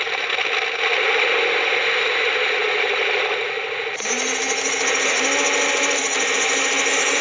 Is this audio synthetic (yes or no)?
no